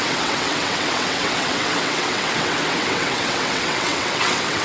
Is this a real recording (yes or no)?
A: no